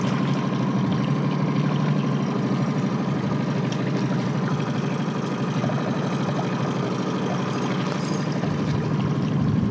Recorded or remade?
recorded